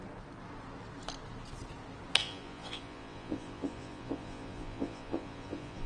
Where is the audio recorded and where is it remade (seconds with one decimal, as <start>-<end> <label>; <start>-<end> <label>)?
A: 0.0-2.2 recorded; 2.2-5.9 remade

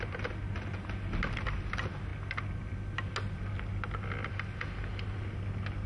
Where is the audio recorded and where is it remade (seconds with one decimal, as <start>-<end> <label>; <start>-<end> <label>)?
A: 0.0-5.9 recorded

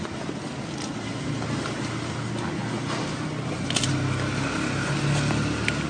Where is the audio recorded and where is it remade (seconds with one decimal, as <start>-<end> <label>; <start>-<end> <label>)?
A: 0.0-5.9 recorded

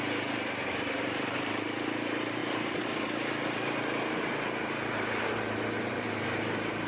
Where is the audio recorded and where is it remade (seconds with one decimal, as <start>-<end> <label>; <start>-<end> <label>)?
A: 0.0-6.9 remade

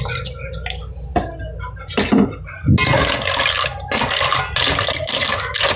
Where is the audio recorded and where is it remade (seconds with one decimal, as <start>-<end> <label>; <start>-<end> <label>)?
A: 0.0-5.8 recorded

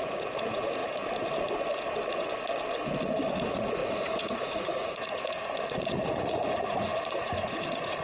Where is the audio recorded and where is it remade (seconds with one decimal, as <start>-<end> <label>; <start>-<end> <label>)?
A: 0.0-0.8 remade; 0.8-3.4 recorded; 3.4-8.0 remade